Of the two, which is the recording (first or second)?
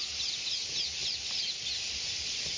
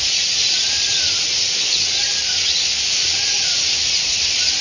first